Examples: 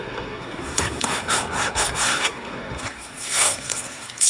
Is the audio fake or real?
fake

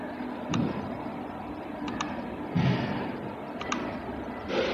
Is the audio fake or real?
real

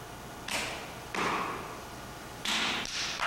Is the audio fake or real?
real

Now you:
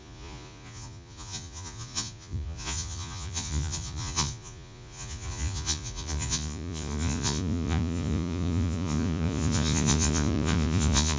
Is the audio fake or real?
fake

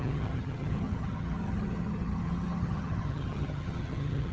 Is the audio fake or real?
fake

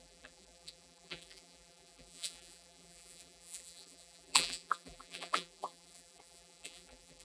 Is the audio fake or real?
fake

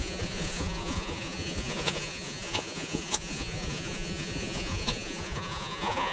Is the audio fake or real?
fake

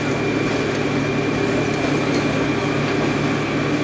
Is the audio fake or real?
real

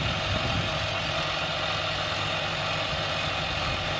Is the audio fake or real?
real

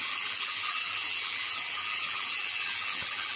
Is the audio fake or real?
fake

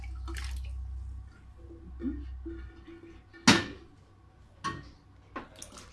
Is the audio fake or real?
real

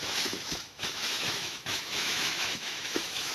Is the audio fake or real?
fake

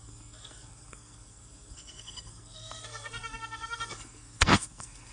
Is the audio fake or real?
fake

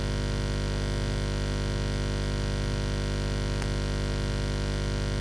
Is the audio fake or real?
real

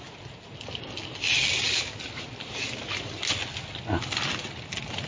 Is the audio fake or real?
real